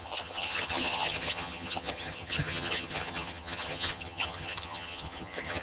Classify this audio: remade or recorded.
remade